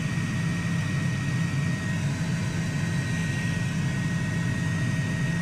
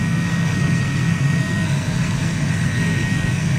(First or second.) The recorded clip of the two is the first